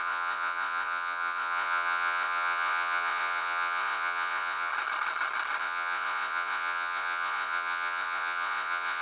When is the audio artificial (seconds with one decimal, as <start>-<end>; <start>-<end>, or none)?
0.0-4.7; 5.6-9.0